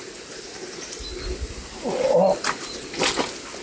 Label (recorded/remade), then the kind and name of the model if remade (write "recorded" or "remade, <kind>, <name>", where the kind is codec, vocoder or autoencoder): recorded